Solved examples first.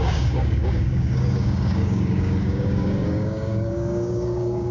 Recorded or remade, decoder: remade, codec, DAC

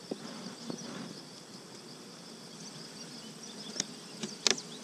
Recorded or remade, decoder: recorded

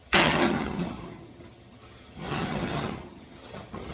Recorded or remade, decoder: remade, vocoder, HiFi-GAN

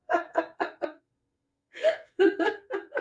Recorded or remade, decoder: remade, codec, SNAC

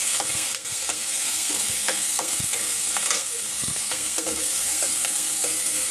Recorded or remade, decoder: remade, codec, SNAC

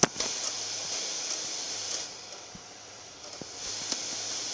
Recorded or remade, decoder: recorded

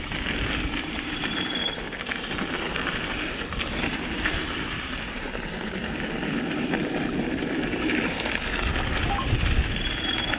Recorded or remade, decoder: recorded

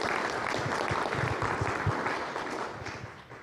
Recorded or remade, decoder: recorded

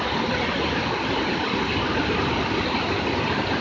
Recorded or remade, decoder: recorded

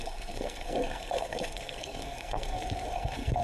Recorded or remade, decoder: remade, codec, SNAC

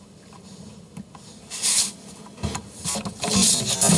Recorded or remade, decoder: recorded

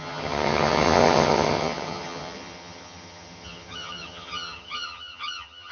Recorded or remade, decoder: remade, vocoder, HiFi-GAN